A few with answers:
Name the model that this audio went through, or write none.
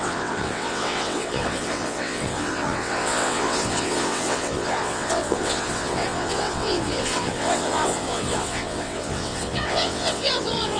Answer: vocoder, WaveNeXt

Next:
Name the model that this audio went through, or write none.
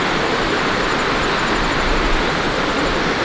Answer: none